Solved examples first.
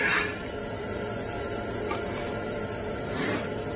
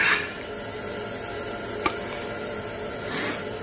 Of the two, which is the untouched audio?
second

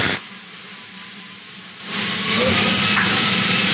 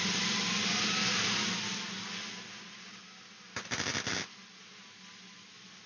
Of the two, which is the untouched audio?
second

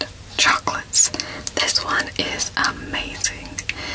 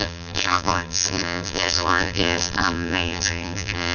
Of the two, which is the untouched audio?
first